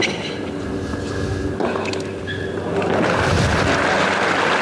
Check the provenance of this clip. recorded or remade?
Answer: recorded